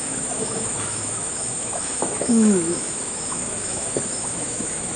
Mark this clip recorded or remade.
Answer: remade